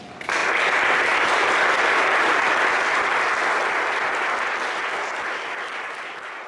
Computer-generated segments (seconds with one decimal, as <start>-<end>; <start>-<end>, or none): none

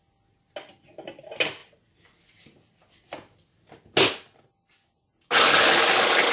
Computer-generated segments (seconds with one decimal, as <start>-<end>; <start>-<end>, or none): none

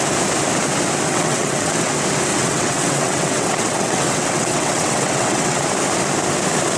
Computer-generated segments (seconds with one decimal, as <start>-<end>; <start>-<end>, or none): 1.1-1.9; 2.3-5.6

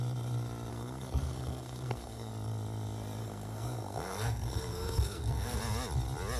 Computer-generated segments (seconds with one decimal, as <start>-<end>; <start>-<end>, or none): 0.7-2.3; 3.2-5.6

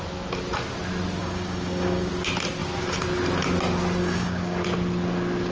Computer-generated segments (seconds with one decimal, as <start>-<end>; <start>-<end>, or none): 1.2-2.1; 4.0-4.6

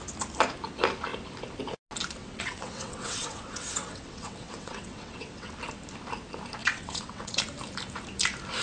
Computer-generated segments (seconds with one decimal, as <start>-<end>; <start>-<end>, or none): 2.2-5.5; 6.6-7.4

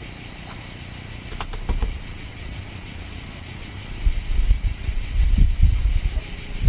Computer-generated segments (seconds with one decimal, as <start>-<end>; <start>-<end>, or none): 1.8-5.8

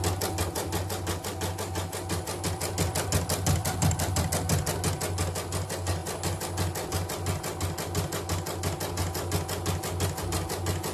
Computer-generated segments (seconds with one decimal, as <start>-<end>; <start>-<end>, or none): 3.6-4.2